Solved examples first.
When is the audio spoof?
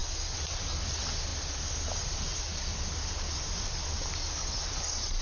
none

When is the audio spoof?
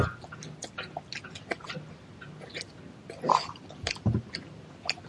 none